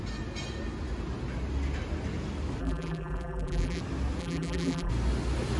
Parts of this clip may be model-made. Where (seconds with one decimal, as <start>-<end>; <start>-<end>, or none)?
2.6-3.8; 4.2-4.9